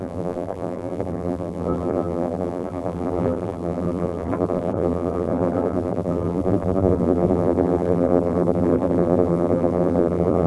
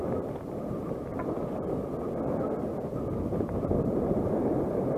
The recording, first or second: second